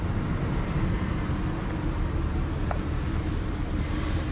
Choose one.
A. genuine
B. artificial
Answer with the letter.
A